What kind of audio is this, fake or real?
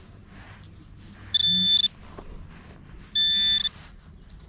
real